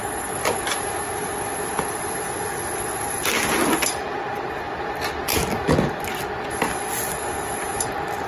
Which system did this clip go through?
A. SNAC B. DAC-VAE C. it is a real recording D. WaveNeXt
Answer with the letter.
C